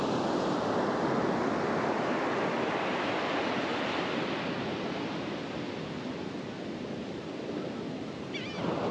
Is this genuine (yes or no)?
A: yes